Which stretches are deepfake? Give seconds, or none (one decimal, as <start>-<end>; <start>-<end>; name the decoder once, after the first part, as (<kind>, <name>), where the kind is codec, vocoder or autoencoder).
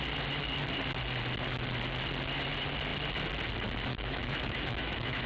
3.9-5.3 (autoencoder, DAC-VAE)